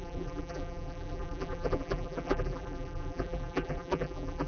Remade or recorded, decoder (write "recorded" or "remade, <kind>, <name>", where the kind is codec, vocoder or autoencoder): remade, vocoder, BigVGAN v2